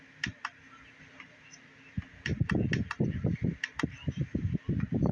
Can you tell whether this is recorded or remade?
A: recorded